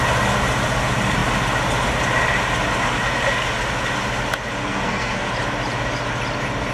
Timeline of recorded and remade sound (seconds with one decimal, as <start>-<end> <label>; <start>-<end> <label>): 0.0-4.6 recorded; 4.6-5.3 remade; 5.3-6.7 recorded